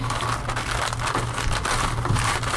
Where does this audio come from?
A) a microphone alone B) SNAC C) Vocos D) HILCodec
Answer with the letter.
A